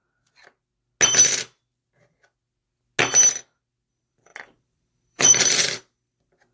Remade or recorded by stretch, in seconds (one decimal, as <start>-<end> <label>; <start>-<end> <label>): 0.0-3.9 recorded; 3.9-6.5 remade